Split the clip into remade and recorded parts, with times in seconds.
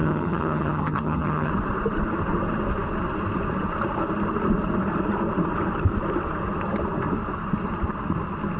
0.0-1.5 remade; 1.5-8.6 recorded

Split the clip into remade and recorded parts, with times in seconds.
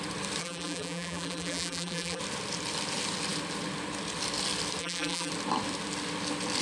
0.0-0.4 recorded; 0.4-2.2 remade; 2.2-4.8 recorded; 4.8-5.3 remade; 5.3-6.6 recorded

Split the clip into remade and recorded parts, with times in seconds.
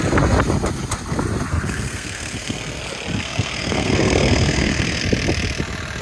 0.0-1.5 recorded; 1.5-2.8 remade; 2.8-3.2 recorded; 3.2-5.0 remade; 5.0-6.0 recorded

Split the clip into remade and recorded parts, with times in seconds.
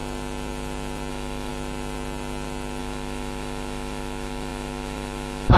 0.0-1.1 recorded; 1.1-1.5 remade; 1.5-2.8 recorded; 2.8-5.6 remade